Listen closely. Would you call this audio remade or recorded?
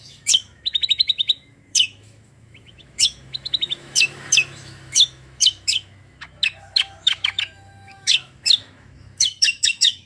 remade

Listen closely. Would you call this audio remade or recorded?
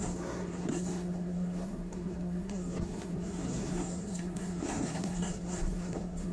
remade